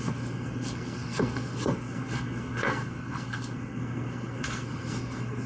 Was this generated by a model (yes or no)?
yes